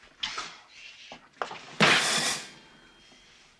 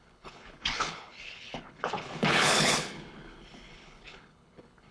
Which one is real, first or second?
first